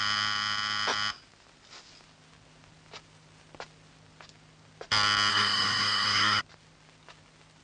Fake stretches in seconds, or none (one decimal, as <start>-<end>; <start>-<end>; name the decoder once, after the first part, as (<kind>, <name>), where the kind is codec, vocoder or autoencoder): 5.3-6.4 (codec, SNAC)